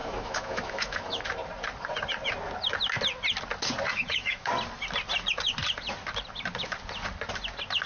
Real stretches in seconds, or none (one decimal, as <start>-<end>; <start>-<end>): 1.3-3.9; 4.5-7.9